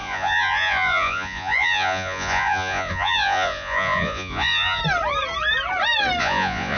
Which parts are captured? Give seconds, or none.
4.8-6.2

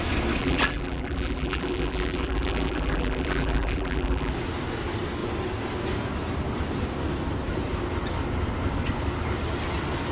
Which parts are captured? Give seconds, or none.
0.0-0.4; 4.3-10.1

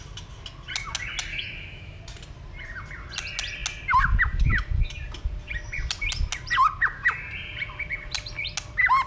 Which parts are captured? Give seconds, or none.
0.0-1.3; 2.0-9.1

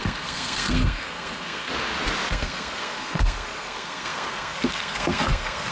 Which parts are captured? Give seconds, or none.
1.7-2.3